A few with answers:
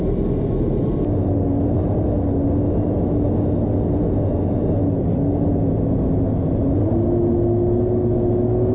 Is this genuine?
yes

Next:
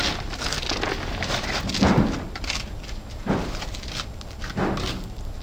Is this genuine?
yes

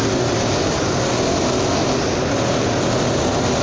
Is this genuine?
yes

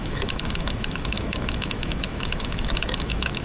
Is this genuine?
no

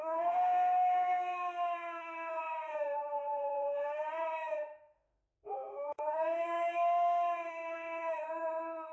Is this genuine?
no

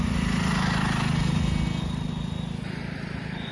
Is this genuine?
yes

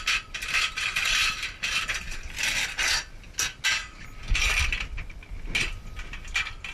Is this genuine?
yes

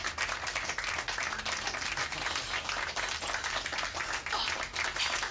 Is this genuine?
yes